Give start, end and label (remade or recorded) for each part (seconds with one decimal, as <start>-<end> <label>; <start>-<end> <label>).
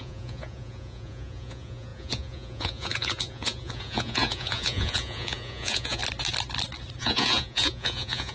0.0-6.0 remade; 6.0-7.0 recorded; 7.0-8.3 remade